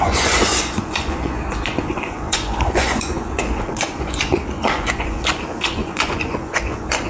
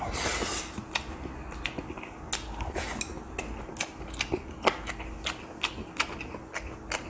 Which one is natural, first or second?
second